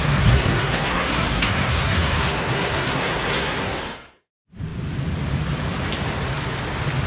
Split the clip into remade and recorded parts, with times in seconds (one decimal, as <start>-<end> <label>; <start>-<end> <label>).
0.0-4.3 remade; 4.3-7.1 recorded